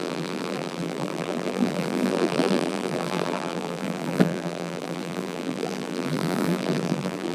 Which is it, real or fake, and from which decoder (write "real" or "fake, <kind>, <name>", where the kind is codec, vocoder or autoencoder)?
fake, vocoder, BigVGAN v2